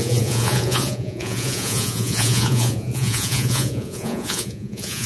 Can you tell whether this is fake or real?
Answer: fake